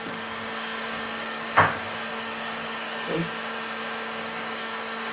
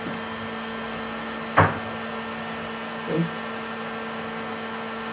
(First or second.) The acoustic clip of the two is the second